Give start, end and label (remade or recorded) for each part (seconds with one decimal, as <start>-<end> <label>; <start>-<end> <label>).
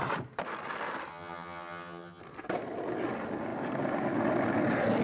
0.0-1.1 recorded; 1.1-2.2 remade; 2.2-5.0 recorded